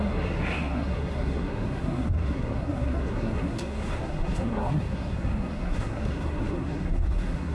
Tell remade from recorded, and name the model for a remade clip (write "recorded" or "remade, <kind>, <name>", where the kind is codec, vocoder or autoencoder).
remade, codec, SNAC